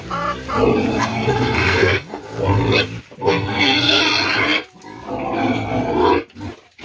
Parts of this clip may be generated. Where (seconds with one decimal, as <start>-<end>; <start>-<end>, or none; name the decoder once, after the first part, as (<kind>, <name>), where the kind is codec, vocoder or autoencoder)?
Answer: 0.9-2.2 (codec, SNAC); 3.2-4.0